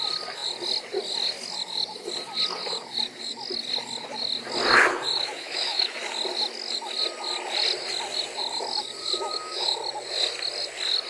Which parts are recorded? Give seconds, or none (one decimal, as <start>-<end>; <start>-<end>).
0.0-5.2; 6.0-9.0; 9.8-11.1